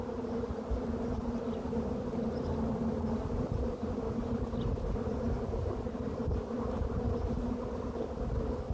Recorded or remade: recorded